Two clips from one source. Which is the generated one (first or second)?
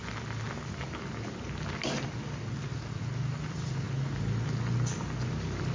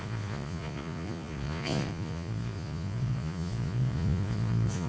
second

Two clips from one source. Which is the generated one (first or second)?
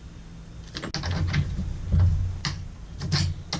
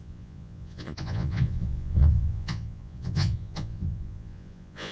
second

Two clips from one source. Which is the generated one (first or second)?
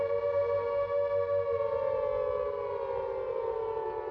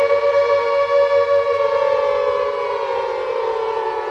second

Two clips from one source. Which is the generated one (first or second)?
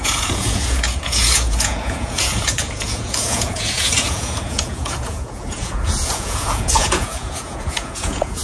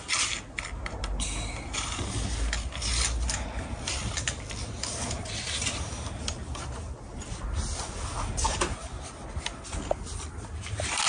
first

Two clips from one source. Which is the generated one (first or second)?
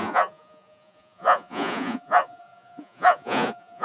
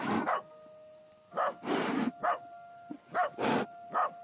first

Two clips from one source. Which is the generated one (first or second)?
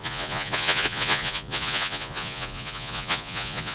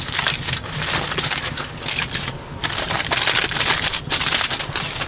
first